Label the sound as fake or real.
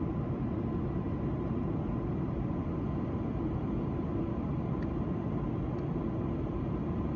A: real